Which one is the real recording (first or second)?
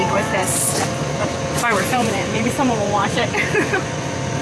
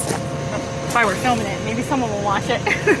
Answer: second